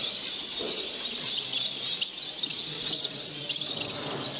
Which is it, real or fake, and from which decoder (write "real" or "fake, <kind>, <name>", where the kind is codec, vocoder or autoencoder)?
real